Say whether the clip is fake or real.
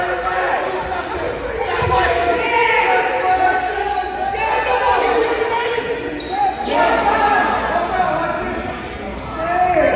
real